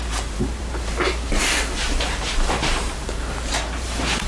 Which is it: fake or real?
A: fake